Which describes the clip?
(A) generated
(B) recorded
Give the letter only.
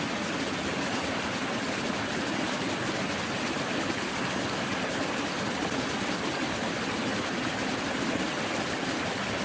B